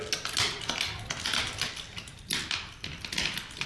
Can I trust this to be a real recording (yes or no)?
yes